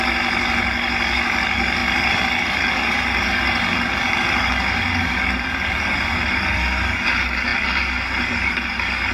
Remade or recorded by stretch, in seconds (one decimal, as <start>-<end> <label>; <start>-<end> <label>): 0.0-9.1 remade